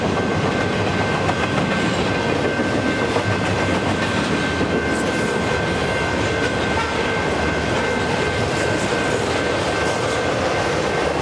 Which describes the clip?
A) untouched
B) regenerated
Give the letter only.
A